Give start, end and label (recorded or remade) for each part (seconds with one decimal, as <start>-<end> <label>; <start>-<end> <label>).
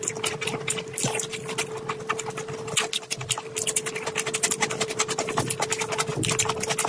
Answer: 0.0-6.9 recorded